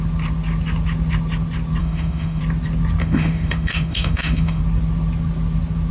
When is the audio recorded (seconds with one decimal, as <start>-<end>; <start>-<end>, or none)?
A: 0.0-1.8; 2.4-3.0; 4.6-5.9